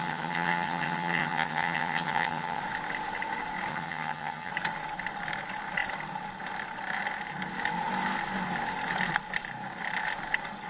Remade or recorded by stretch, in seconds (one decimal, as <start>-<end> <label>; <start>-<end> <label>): 0.0-2.6 remade; 2.6-3.7 recorded; 3.7-4.5 remade; 4.5-10.7 recorded